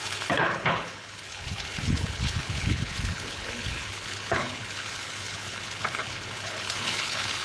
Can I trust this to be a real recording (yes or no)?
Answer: no